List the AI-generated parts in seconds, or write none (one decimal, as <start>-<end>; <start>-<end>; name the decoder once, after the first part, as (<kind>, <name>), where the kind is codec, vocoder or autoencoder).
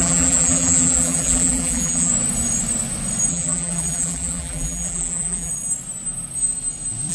0.0-2.1 (vocoder, BigVGAN v2); 3.3-5.5